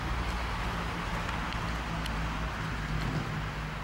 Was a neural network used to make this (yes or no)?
no